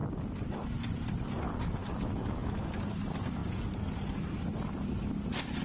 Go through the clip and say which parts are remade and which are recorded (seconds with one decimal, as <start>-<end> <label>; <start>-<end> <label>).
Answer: 0.0-1.8 recorded; 1.8-2.6 remade; 2.6-5.6 recorded